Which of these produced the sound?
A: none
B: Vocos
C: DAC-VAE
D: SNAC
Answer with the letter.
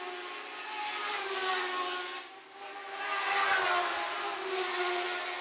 A